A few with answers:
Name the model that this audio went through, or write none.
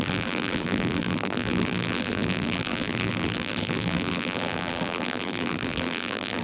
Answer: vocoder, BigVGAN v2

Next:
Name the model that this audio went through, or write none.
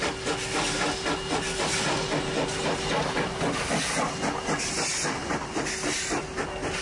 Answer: none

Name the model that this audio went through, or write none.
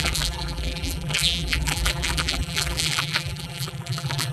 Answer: vocoder, BigVGAN v2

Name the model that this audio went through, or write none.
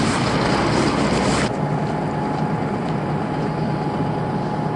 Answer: none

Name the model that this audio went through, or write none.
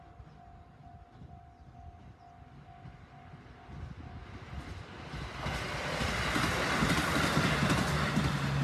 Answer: none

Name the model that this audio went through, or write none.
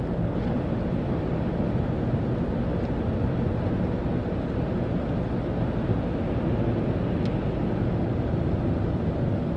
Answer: none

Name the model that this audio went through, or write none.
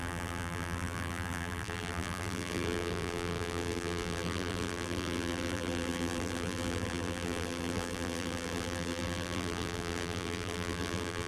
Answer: vocoder, BigVGAN v2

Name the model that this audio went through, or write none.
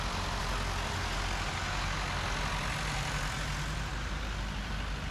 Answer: none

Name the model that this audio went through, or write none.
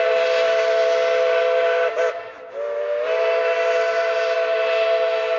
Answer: none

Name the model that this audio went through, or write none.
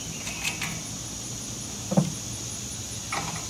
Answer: none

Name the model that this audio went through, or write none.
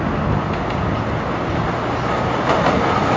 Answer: none